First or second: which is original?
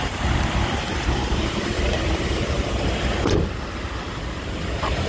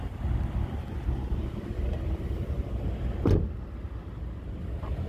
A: second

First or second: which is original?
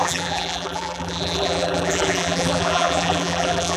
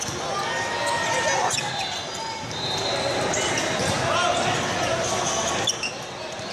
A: second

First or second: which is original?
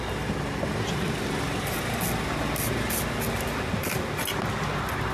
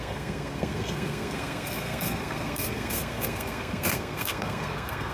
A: first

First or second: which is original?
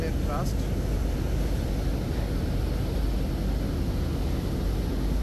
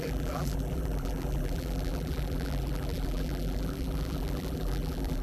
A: first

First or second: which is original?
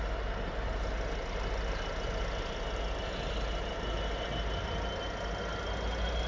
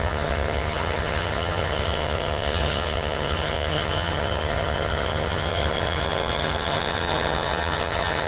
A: first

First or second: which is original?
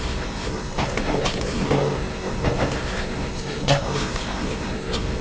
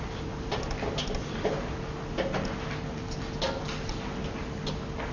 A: second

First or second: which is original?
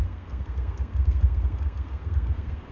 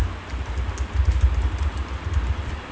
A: second